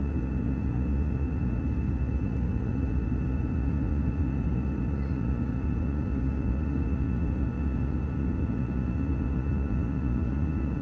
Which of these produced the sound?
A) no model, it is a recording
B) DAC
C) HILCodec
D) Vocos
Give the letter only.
D